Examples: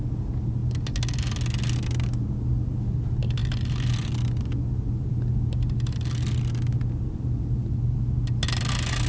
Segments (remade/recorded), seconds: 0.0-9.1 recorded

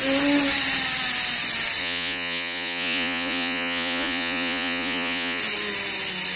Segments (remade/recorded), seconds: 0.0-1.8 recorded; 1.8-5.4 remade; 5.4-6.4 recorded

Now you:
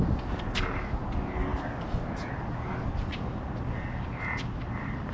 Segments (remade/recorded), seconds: 0.0-5.1 recorded

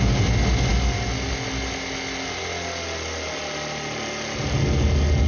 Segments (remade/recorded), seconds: 0.0-5.3 recorded